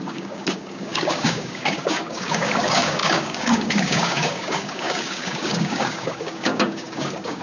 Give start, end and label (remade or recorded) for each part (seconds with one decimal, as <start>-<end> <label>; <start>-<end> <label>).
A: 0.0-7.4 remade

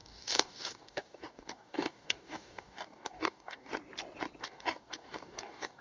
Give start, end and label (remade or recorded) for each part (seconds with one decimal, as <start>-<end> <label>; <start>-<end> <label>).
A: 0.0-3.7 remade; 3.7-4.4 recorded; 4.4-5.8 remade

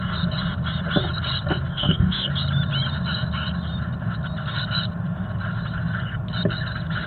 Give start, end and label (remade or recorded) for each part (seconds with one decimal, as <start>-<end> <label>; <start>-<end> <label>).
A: 0.0-1.7 recorded; 1.7-2.3 remade; 2.3-7.1 recorded

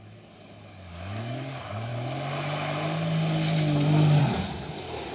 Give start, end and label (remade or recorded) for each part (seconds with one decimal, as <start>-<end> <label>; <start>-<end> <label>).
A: 0.0-1.9 remade; 1.9-4.2 recorded; 4.2-5.1 remade